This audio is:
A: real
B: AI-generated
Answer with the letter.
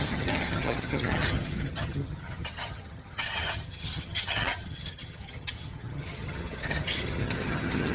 B